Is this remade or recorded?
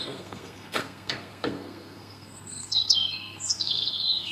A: remade